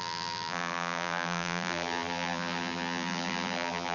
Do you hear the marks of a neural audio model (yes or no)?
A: yes